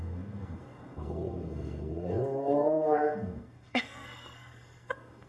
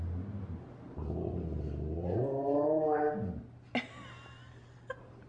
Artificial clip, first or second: first